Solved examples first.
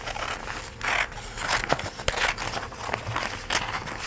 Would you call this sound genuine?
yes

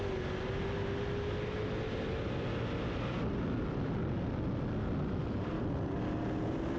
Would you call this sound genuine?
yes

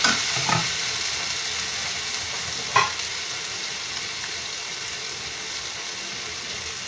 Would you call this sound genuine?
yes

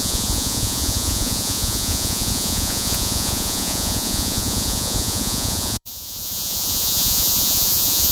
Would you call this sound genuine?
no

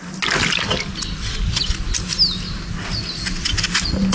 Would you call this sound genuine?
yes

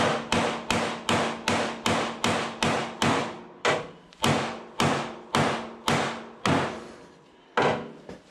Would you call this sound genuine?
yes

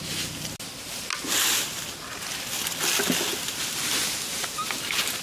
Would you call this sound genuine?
yes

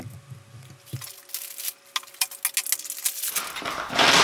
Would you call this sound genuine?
yes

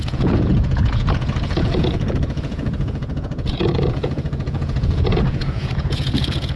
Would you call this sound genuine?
no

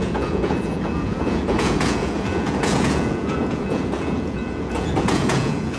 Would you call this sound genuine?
no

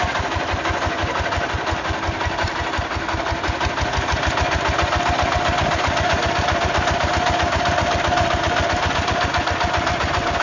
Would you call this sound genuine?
yes